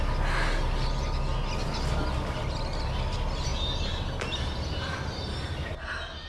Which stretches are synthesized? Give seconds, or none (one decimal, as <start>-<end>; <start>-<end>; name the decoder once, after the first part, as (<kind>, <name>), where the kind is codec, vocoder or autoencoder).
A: none